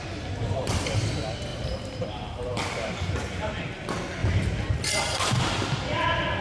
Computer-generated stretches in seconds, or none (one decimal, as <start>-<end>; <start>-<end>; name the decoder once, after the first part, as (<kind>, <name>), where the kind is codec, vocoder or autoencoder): 1.5-3.5 (vocoder, BigVGAN v2); 4.2-4.7